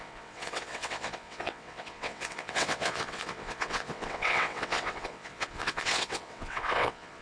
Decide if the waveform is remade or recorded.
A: remade